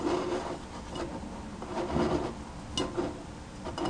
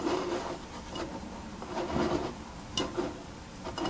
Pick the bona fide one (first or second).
first